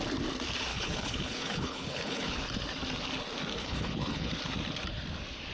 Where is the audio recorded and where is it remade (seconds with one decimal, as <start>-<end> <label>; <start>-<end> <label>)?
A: 0.0-0.7 recorded; 0.7-2.3 remade; 2.3-3.6 recorded; 3.6-4.3 remade; 4.3-5.5 recorded